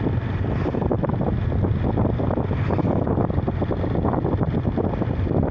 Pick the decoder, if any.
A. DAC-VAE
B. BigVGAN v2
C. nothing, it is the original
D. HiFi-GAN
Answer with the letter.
C